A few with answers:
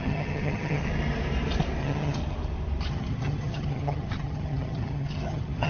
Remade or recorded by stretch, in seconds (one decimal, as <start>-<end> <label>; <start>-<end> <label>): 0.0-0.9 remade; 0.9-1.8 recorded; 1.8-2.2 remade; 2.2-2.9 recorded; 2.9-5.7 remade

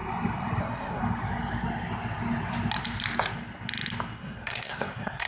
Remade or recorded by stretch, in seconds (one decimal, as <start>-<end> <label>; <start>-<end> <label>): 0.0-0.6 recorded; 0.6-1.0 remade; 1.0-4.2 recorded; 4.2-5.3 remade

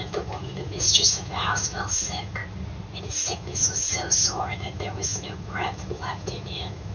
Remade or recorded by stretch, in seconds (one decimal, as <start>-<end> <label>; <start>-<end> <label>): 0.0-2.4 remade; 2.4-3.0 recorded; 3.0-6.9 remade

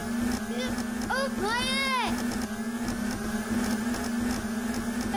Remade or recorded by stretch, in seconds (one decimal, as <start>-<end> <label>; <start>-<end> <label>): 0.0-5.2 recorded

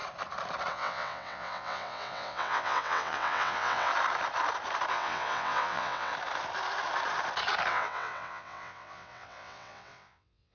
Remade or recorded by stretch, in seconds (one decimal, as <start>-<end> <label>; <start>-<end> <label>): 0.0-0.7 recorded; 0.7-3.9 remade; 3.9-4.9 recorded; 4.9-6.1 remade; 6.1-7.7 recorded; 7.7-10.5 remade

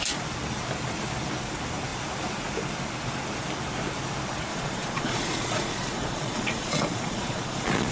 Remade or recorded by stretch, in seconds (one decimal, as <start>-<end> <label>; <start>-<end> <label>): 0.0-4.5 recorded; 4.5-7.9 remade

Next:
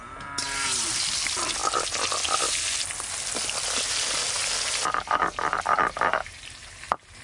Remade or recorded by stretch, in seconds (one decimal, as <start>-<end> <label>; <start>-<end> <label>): 0.0-7.2 recorded